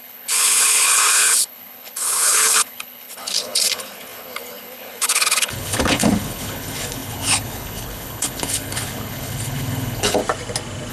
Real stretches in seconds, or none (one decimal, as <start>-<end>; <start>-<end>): 10.2-10.9